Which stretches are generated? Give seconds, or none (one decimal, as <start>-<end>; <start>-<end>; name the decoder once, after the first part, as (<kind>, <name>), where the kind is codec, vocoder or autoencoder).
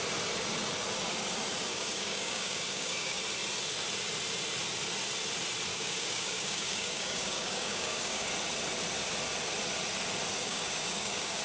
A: 1.7-3.2 (codec, DAC); 5.7-8.3; 10.4-11.4